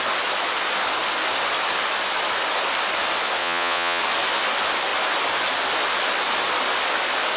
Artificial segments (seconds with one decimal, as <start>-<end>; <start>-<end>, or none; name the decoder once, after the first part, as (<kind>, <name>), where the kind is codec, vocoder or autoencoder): 3.4-4.0 (vocoder, Vocos)